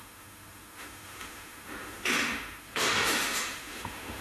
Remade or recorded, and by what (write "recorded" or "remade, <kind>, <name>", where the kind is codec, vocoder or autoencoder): remade, autoencoder, DAC-VAE